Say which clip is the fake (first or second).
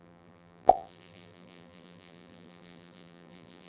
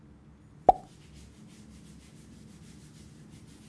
first